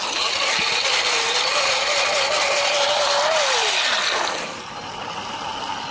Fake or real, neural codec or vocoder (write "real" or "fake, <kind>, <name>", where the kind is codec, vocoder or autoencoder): real